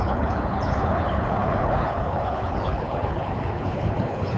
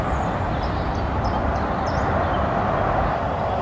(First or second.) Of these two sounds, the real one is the second